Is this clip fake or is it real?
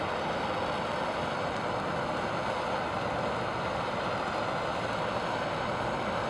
real